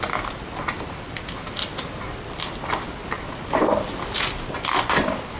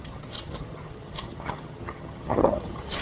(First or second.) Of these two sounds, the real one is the first